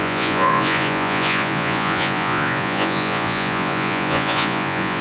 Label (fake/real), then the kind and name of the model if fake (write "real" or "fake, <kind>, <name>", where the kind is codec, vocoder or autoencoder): fake, vocoder, Vocos